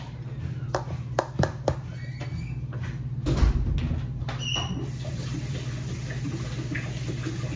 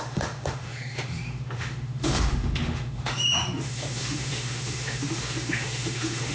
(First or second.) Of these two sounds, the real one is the first